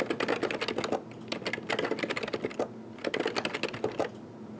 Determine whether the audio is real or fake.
real